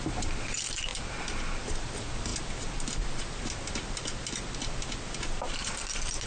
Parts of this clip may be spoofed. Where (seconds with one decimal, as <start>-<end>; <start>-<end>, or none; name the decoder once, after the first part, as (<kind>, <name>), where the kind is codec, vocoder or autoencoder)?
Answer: none